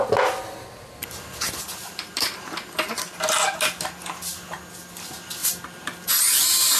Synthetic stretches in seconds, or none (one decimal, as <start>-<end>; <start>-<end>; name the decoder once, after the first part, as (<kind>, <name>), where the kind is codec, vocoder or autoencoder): 1.0-3.2 (vocoder, BigVGAN v2); 5.4-6.1